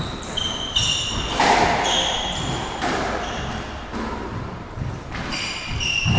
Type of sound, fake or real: fake